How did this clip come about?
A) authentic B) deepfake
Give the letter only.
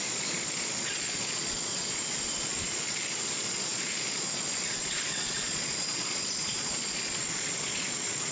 B